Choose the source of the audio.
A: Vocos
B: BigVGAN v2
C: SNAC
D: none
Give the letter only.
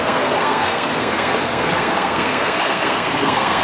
C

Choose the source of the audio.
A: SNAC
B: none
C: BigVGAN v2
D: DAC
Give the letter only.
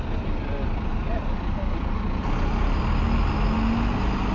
B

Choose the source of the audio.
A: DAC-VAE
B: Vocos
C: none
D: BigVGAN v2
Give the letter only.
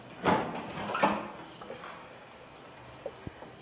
C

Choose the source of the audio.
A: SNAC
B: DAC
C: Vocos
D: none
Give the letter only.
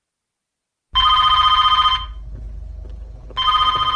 D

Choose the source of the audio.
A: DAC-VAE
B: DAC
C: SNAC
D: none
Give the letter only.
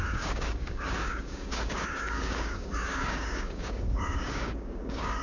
B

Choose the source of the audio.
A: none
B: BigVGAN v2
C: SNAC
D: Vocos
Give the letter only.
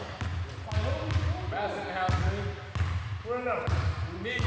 A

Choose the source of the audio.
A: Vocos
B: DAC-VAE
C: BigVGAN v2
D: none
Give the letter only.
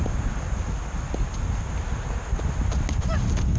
D